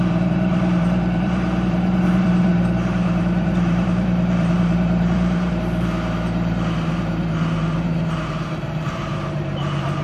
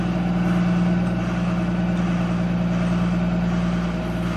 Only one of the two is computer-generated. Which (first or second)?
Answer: first